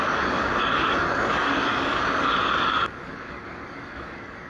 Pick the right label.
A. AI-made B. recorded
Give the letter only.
A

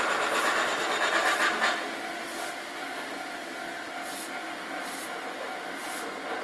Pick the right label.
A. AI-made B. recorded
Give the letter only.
B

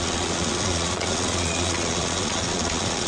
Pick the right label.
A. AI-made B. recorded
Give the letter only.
A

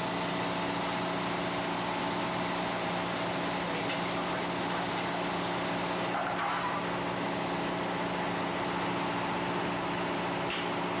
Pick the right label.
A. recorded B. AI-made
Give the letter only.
A